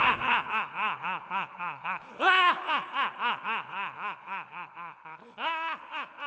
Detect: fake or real fake